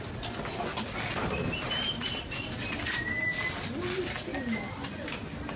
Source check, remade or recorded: recorded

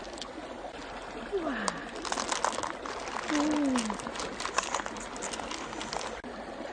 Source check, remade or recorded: recorded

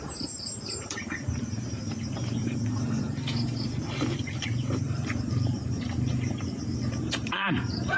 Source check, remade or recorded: remade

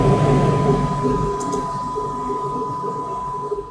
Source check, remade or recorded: recorded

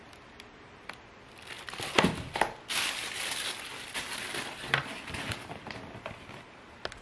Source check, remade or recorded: recorded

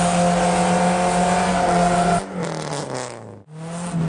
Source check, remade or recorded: recorded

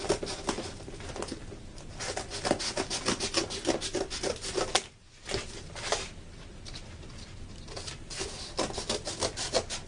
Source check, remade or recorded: recorded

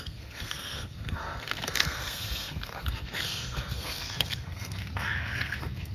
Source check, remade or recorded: remade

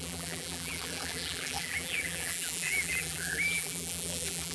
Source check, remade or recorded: remade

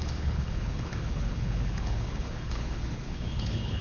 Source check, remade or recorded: remade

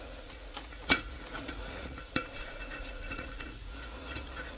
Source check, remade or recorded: remade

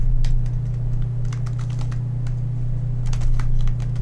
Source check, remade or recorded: recorded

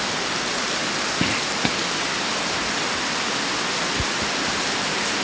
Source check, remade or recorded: recorded